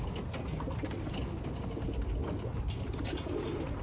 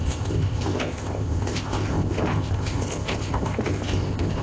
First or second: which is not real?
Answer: second